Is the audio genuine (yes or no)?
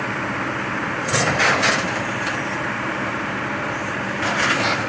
no